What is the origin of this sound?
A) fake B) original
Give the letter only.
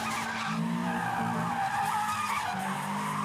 B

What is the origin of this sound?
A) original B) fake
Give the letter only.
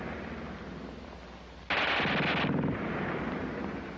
A